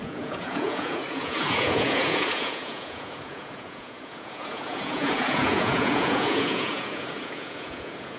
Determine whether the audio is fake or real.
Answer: fake